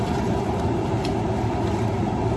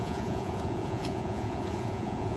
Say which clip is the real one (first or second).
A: first